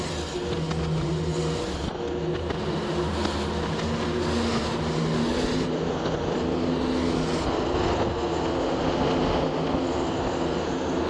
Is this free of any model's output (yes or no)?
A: yes